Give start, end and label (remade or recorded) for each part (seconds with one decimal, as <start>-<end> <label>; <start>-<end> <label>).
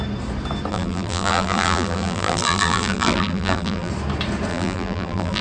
0.0-0.7 recorded; 0.7-3.9 remade; 3.9-4.5 recorded; 4.5-5.4 remade